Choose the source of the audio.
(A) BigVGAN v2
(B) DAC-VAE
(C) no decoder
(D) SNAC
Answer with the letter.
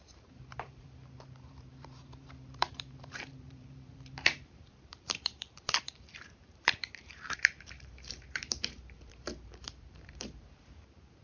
A